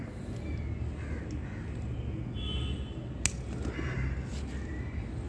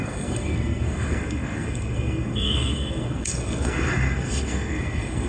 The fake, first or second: second